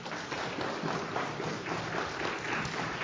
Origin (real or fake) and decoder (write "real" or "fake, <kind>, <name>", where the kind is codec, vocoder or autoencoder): real